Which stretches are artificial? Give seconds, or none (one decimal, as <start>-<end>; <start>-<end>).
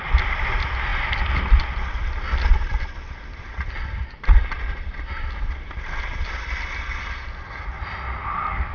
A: none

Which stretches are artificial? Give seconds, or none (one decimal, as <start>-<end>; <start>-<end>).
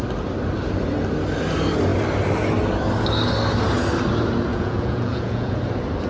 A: 4.5-5.6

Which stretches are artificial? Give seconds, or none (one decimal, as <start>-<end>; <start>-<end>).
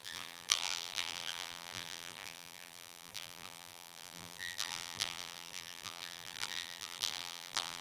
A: 0.0-7.8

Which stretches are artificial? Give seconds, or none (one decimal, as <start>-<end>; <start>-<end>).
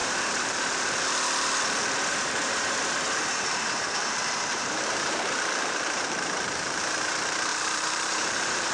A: 0.0-1.0; 2.1-6.8; 7.5-8.7